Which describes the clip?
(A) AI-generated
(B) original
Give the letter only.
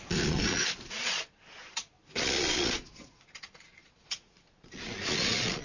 A